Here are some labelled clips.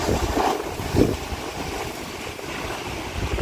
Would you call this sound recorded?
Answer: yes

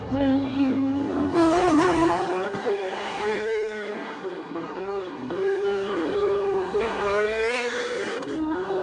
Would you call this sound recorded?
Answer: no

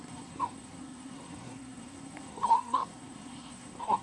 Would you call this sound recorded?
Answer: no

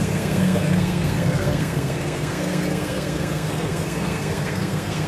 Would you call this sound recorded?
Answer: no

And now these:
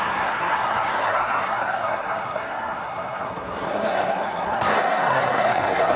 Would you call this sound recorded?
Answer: no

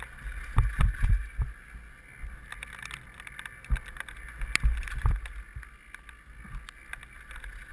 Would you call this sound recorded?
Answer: yes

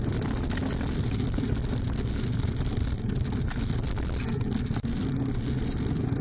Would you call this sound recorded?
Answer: yes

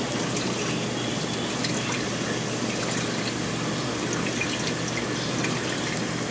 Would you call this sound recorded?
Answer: yes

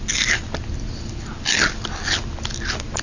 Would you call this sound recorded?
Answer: yes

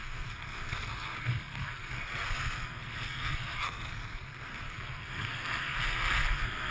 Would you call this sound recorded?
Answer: no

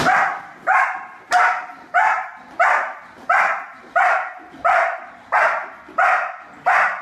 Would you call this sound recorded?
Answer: yes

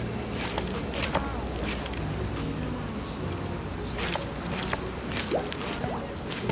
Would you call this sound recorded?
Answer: yes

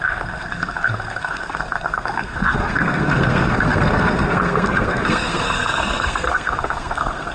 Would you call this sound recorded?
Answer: no